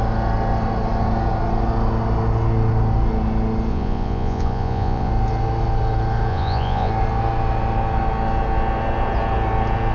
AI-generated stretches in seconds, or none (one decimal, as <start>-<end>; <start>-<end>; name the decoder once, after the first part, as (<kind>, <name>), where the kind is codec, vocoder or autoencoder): 3.7-5.1 (vocoder, Vocos); 6.3-6.9